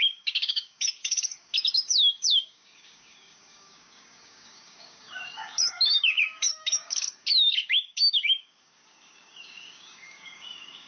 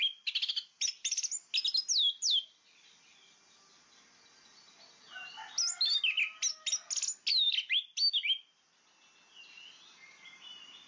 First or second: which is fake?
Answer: first